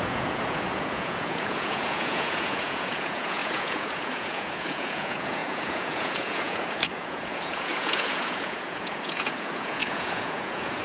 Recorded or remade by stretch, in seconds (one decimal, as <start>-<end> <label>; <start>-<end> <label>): 0.0-10.8 remade